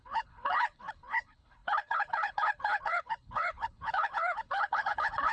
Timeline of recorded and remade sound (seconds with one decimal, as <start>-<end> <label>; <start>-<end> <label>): 0.0-5.3 remade